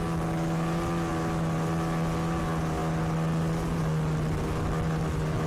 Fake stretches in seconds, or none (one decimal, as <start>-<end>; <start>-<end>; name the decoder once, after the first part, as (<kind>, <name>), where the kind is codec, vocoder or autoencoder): none